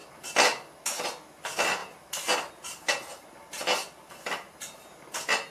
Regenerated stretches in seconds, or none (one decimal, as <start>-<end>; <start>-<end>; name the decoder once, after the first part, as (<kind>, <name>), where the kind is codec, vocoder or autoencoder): none

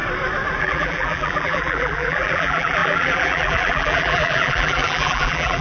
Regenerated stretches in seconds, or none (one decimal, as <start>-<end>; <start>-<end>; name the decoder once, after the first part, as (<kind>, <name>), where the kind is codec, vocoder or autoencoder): 0.6-5.6 (vocoder, BigVGAN v2)